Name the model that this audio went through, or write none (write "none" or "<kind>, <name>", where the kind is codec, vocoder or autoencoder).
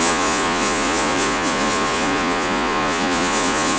vocoder, Vocos